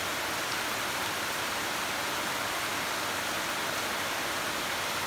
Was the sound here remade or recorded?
recorded